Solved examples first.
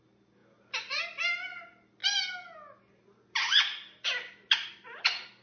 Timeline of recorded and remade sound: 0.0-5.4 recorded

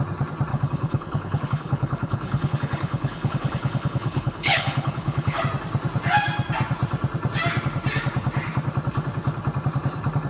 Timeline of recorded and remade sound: 0.0-0.5 recorded; 0.5-5.4 remade; 5.4-10.3 recorded